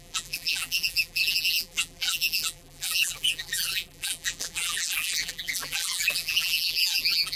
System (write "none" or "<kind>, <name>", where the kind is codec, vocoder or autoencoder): vocoder, BigVGAN v2